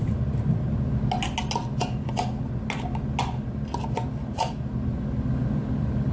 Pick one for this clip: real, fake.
real